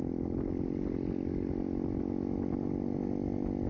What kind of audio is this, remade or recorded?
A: recorded